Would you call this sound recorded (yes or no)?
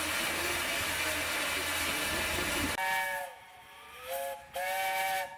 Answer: yes